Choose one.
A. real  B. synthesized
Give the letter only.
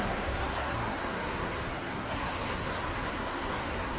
B